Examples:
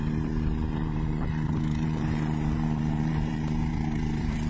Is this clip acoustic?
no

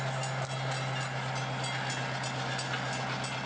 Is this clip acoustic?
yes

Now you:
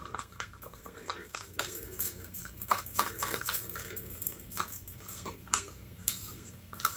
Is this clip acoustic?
no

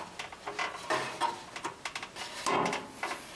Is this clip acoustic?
yes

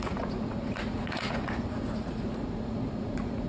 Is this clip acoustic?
no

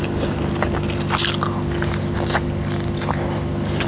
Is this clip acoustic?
yes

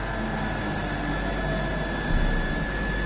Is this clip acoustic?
yes